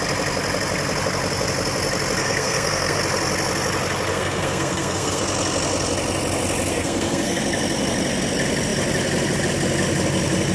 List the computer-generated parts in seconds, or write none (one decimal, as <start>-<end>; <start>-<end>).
2.2-3.0; 4.1-5.2; 6.7-7.4